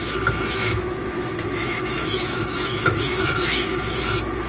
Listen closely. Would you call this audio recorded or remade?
remade